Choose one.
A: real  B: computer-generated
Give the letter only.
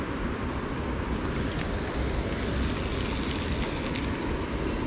A